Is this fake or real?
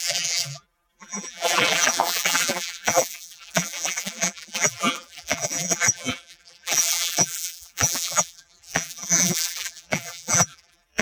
fake